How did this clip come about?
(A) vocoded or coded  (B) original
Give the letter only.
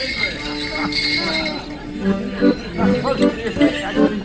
B